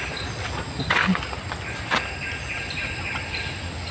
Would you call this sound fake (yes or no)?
no